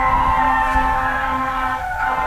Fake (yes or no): yes